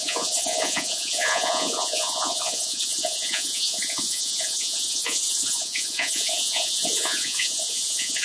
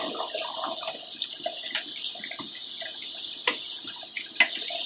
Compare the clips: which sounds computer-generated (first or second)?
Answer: first